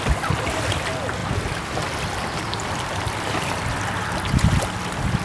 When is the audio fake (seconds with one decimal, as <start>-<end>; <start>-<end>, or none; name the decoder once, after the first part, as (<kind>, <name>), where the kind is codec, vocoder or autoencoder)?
none